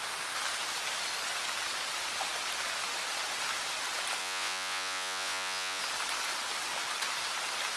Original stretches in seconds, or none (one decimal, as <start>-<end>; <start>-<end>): 0.0-4.2; 5.8-7.8